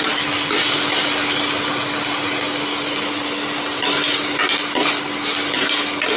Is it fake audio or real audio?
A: real